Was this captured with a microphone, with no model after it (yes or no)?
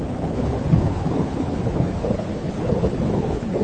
no